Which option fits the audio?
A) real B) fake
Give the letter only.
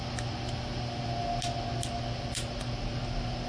A